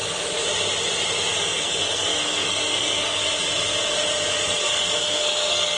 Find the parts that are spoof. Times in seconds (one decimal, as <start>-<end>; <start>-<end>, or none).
1.3-3.2; 4.6-5.8